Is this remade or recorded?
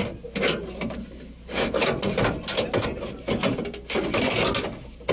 recorded